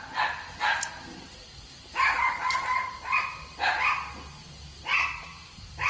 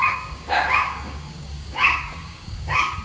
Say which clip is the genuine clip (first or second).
first